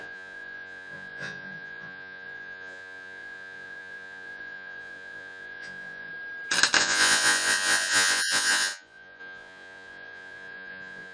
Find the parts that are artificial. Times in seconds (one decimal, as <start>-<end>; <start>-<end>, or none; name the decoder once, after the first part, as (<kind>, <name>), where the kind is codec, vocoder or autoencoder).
0.0-6.1 (vocoder, Vocos); 6.8-11.1